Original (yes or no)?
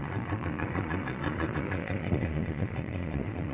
no